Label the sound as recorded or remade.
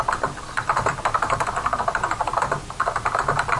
recorded